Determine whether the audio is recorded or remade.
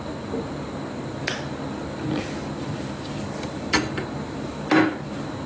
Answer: recorded